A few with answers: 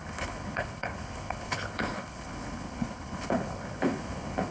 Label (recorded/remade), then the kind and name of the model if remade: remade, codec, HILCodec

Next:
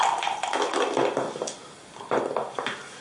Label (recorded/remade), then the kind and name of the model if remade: recorded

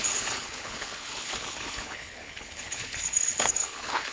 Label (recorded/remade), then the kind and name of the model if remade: remade, codec, HILCodec